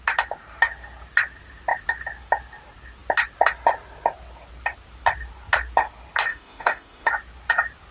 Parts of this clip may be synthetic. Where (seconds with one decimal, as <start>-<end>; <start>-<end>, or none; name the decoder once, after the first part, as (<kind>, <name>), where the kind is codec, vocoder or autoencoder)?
6.3-7.1 (autoencoder, DAC-VAE)